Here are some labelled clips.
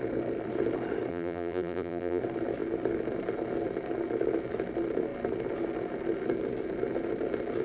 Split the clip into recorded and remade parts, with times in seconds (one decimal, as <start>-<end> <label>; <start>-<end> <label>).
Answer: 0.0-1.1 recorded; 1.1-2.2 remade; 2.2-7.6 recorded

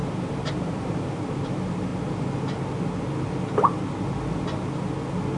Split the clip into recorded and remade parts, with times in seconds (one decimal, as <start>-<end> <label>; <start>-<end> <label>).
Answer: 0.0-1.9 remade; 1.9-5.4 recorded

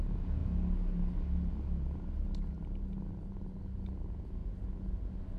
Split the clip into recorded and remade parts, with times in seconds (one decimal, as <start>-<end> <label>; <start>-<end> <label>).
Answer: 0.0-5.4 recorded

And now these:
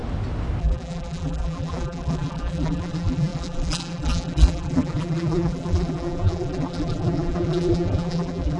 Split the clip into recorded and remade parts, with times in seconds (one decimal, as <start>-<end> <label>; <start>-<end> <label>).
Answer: 0.0-0.6 recorded; 0.6-8.6 remade